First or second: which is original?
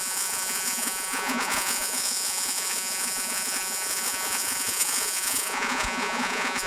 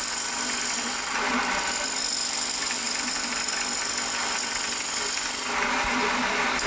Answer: second